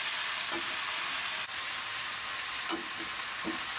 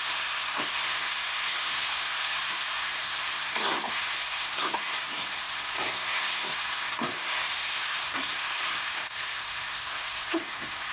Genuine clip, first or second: first